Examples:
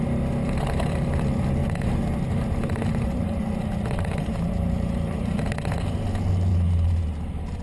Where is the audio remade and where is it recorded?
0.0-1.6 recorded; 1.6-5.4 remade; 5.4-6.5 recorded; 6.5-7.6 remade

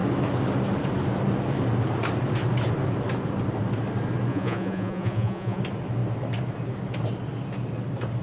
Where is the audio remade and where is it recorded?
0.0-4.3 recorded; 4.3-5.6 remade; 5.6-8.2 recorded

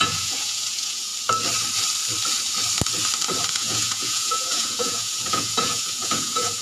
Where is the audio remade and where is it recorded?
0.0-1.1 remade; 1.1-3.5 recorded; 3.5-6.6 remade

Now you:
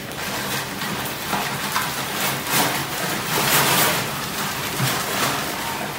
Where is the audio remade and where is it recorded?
0.0-2.8 recorded; 2.8-5.0 remade; 5.0-6.0 recorded

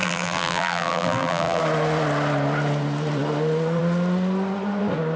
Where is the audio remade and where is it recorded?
0.0-1.6 remade; 1.6-5.2 recorded